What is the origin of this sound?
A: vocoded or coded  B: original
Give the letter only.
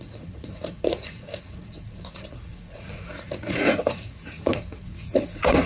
A